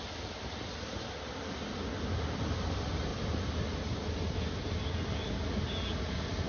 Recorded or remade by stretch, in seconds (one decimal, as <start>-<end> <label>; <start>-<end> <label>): 0.0-3.1 recorded; 3.1-4.1 remade; 4.1-6.5 recorded